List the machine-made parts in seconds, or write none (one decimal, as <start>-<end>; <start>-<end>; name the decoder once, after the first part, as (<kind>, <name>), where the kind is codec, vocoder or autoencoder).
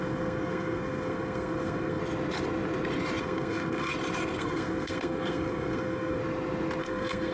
0.0-2.0 (codec, SNAC); 3.2-3.9; 4.4-6.2; 6.8-7.3